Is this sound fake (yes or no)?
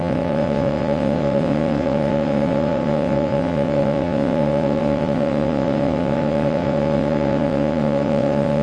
yes